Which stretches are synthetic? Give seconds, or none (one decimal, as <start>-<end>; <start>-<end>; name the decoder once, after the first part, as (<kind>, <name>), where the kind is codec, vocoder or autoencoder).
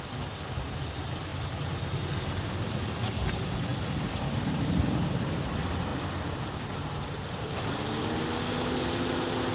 3.7-5.1 (vocoder, BigVGAN v2); 5.9-6.5